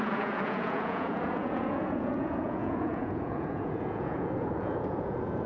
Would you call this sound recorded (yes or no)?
no